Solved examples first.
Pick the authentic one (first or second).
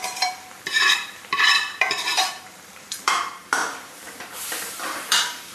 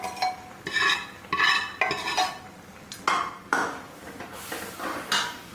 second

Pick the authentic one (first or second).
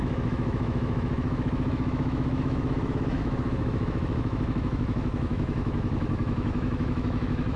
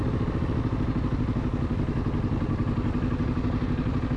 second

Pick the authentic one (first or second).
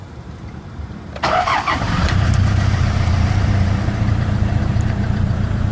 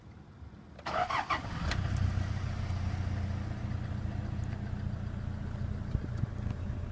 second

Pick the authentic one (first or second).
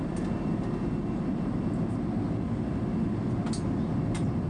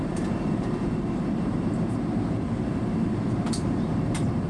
first